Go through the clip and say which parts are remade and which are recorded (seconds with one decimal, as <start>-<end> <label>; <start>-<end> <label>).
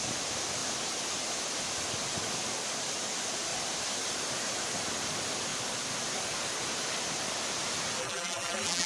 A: 0.0-8.0 recorded; 8.0-8.9 remade